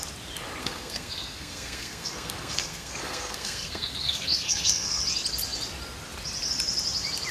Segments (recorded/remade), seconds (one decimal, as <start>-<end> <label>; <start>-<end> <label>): 0.0-0.6 recorded; 0.6-5.0 remade; 5.0-7.3 recorded